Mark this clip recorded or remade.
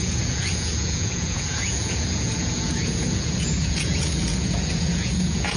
remade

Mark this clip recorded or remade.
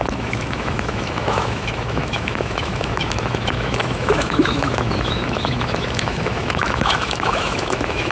remade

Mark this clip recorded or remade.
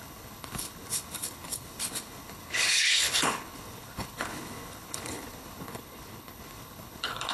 remade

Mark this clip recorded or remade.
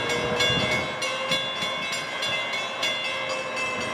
recorded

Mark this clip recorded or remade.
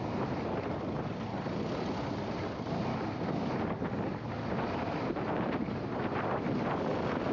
recorded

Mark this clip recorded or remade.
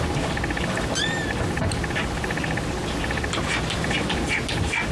recorded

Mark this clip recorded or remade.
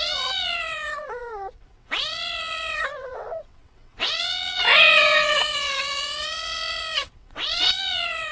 remade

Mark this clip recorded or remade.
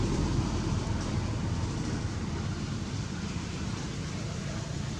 remade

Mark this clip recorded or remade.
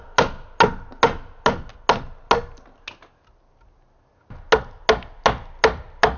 recorded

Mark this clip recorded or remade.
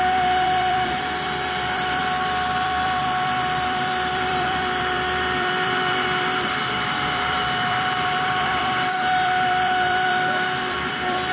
remade